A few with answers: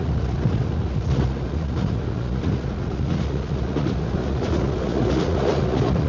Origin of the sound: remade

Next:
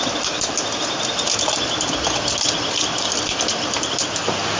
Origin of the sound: recorded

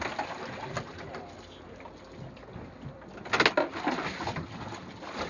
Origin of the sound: recorded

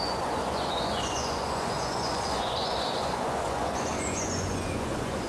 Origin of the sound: remade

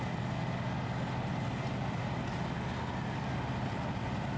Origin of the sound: recorded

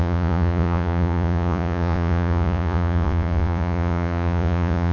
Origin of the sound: remade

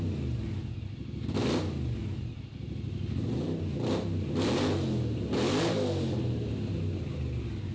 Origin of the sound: recorded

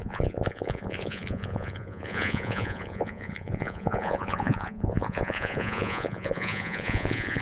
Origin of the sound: remade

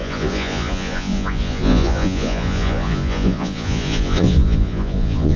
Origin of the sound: remade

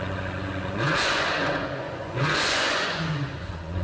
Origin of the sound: remade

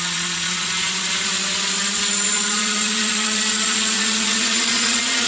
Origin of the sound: remade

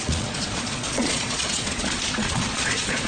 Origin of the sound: remade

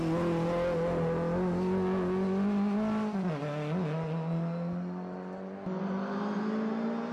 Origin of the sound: recorded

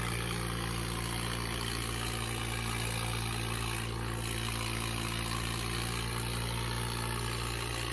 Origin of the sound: recorded